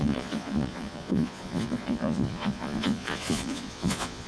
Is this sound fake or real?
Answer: fake